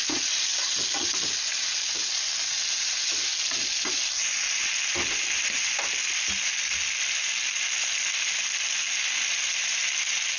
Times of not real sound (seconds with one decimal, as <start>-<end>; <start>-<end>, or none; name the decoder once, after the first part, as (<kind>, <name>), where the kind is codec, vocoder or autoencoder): none